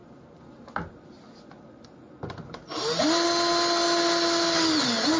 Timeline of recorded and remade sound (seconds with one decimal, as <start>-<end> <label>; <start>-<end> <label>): 0.0-5.2 recorded